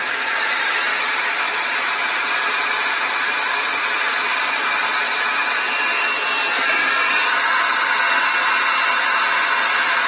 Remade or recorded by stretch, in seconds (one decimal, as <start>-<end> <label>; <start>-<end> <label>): 0.0-4.8 remade; 4.8-10.1 recorded